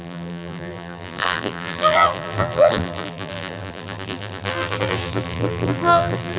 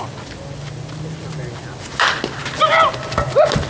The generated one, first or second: first